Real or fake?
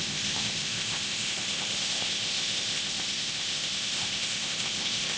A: fake